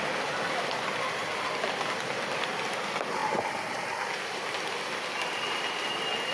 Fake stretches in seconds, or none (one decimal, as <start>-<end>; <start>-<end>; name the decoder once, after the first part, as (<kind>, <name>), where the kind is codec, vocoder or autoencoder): none